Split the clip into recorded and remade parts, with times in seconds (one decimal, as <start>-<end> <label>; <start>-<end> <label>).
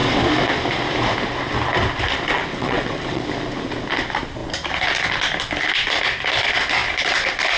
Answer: 0.0-2.5 recorded; 2.5-3.2 remade; 3.2-7.6 recorded